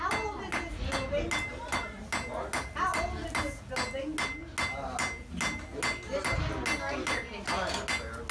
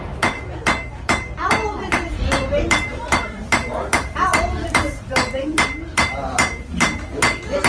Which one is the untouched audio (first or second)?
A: first